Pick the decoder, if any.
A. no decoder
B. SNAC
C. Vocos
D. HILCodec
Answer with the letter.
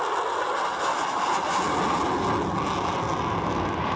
A